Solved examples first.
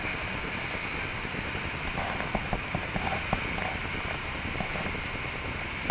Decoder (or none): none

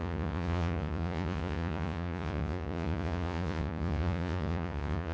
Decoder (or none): vocoder, Vocos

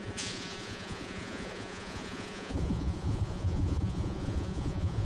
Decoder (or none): vocoder, Vocos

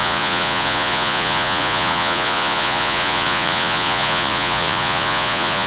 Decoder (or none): vocoder, Vocos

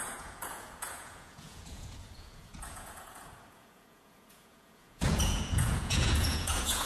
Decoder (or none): vocoder, Vocos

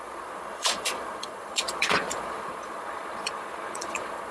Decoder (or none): vocoder, Vocos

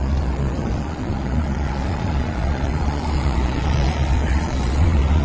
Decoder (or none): vocoder, Vocos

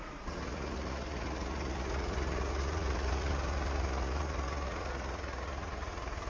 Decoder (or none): vocoder, Vocos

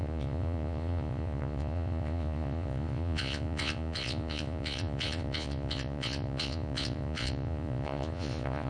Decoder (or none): vocoder, Vocos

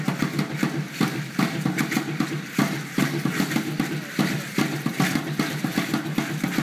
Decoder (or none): none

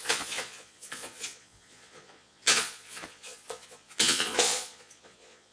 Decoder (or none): vocoder, Vocos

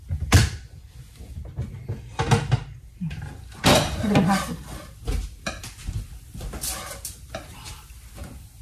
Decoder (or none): none